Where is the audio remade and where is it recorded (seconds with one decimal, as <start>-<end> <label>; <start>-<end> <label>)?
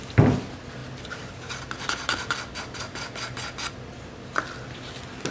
0.0-0.8 recorded; 0.8-3.7 remade; 3.7-5.3 recorded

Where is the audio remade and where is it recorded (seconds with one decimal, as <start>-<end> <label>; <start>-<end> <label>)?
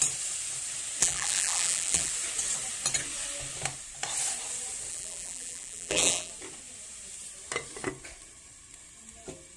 0.0-1.0 recorded; 1.0-2.1 remade; 2.1-4.9 recorded; 4.9-6.3 remade; 6.3-9.6 recorded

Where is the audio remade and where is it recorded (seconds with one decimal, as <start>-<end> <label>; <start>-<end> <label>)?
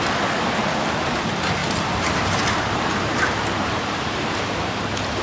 0.0-1.6 recorded; 1.6-3.8 remade; 3.8-5.2 recorded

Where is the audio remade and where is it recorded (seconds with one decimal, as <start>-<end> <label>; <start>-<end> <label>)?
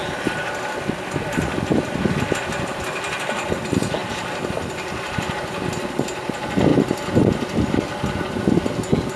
0.0-4.0 recorded; 4.0-5.3 remade; 5.3-9.2 recorded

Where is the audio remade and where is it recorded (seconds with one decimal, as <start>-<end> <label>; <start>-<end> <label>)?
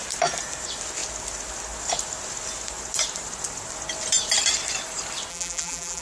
0.0-5.3 recorded; 5.3-6.0 remade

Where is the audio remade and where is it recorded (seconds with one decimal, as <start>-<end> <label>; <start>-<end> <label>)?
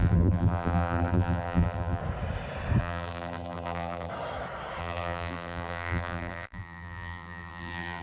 0.0-2.0 remade; 2.0-2.8 recorded; 2.8-4.1 remade; 4.1-4.8 recorded; 4.8-8.0 remade